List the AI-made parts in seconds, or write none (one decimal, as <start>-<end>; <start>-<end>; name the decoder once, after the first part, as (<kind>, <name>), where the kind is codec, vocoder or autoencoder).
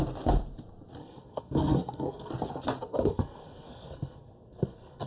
1.0-2.3 (codec, SNAC); 2.9-5.1